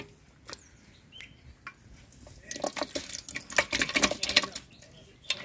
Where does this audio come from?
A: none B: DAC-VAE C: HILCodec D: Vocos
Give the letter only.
A